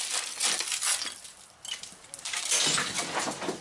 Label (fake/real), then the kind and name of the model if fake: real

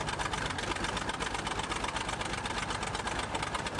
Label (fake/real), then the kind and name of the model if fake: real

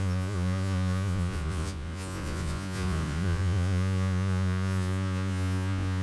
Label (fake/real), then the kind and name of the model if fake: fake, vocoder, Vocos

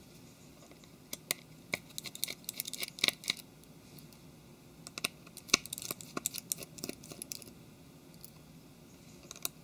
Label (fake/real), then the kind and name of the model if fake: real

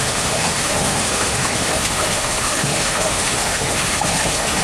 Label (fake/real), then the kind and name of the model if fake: fake, autoencoder, DAC-VAE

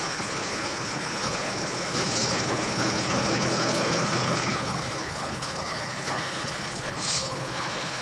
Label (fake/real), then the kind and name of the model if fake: fake, codec, HILCodec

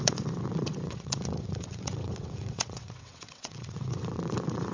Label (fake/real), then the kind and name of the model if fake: fake, vocoder, WaveNeXt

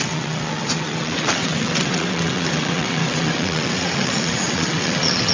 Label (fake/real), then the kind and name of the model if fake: fake, vocoder, WaveNeXt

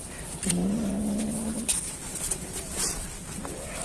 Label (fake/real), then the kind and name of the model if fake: real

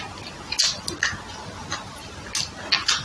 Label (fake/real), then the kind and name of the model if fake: real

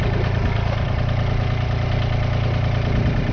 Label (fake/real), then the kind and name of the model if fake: real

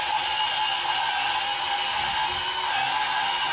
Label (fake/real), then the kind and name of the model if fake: real